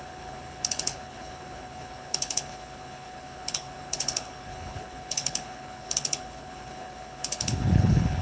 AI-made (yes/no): yes